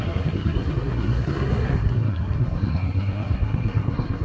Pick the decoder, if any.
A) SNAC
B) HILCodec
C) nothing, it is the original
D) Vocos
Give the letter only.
A